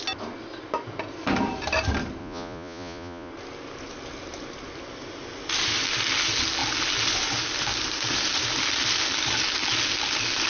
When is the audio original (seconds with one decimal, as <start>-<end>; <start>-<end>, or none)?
0.0-2.2; 3.3-10.5